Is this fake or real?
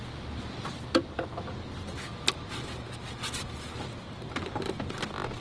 real